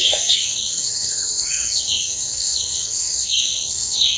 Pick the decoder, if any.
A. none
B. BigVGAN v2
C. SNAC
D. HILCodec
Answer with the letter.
C